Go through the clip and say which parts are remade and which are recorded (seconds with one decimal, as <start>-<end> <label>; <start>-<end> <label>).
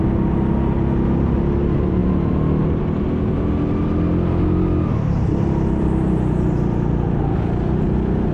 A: 0.0-8.3 recorded